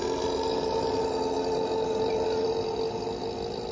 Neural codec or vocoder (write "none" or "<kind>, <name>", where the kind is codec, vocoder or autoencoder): none